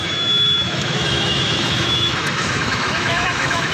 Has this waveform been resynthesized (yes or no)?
yes